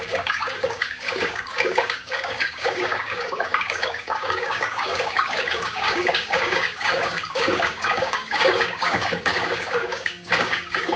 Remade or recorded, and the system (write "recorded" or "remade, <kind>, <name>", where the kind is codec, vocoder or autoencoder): remade, codec, DAC